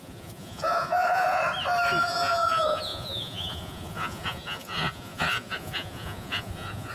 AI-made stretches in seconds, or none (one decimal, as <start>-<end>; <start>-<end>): 0.0-1.4; 2.0-6.9